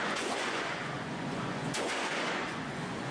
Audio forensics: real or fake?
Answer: fake